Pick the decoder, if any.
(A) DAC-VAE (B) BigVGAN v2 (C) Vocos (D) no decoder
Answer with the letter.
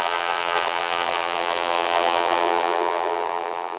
B